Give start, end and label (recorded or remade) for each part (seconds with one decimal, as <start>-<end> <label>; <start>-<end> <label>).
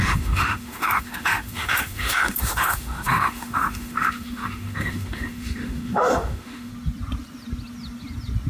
0.0-6.7 remade; 6.7-8.5 recorded